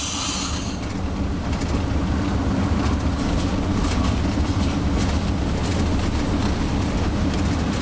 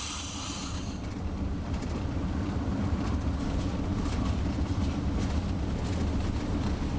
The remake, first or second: second